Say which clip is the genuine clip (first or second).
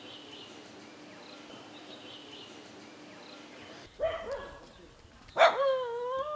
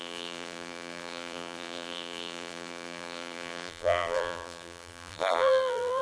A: first